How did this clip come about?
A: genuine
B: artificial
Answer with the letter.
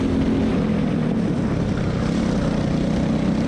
A